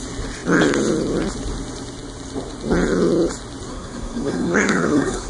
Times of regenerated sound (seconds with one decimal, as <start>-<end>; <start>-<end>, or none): 3.7-5.3